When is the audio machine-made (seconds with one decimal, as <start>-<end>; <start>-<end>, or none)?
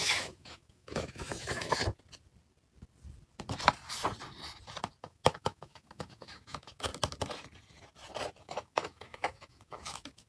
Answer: 0.0-1.8; 5.0-6.9; 8.4-10.3